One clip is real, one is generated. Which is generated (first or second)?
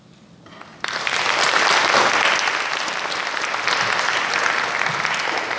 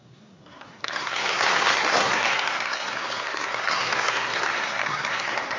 second